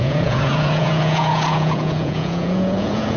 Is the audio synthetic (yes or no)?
yes